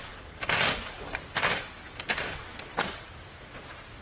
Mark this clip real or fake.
real